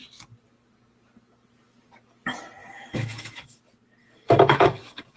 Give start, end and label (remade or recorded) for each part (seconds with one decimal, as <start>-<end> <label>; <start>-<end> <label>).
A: 0.0-2.6 recorded; 2.6-3.6 remade; 3.6-4.0 recorded; 4.0-5.2 remade